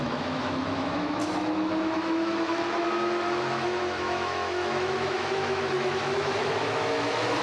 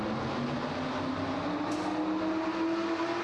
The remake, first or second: first